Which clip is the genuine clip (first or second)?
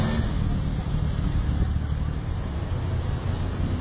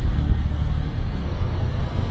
first